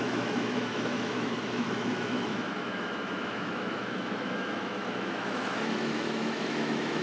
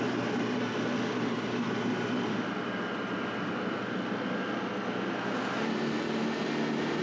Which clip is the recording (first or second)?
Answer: second